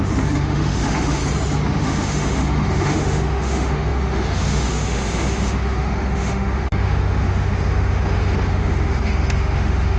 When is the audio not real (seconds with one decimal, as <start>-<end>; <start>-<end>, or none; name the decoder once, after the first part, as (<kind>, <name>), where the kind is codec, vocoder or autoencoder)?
0.0-1.2 (autoencoder, DAC-VAE); 1.7-10.0